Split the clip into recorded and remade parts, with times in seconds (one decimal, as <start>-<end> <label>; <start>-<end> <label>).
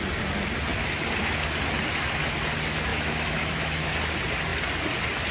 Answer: 0.0-2.9 recorded; 2.9-3.9 remade; 3.9-5.3 recorded